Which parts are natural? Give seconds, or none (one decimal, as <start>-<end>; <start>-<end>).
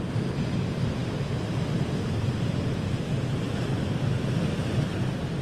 0.0-5.4